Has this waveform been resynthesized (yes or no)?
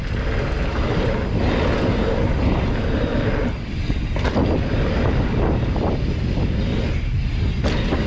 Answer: no